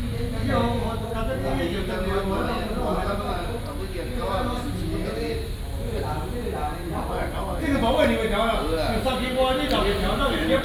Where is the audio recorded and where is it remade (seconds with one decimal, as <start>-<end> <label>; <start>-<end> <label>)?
0.0-10.6 recorded